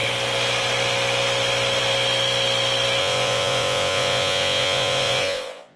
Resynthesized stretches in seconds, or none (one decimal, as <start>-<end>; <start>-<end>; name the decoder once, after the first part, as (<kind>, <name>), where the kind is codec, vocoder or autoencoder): 3.0-5.8 (vocoder, Vocos)